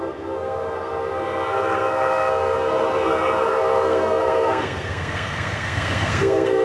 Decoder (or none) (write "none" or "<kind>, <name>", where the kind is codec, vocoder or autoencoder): codec, SNAC